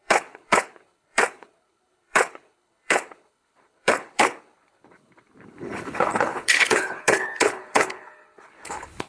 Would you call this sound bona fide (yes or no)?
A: no